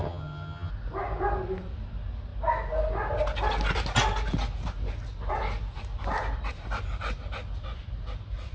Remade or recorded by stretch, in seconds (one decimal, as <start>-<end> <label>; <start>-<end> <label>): 0.0-0.7 remade; 0.7-8.5 recorded